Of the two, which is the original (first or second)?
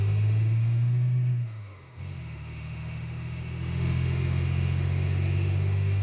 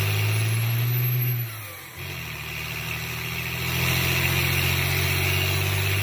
second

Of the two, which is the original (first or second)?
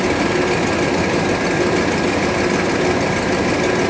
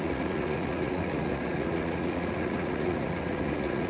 first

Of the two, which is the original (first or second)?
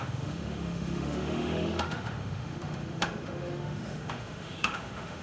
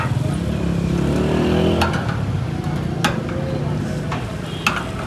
second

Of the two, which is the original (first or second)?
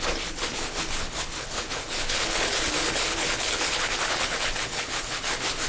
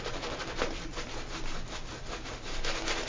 second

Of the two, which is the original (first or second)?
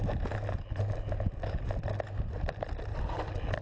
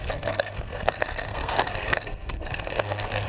first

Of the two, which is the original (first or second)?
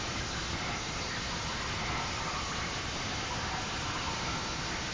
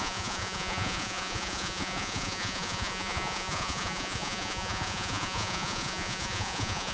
first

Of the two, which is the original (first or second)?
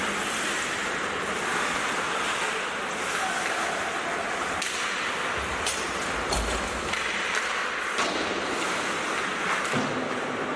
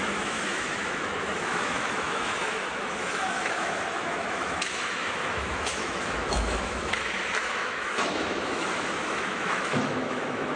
first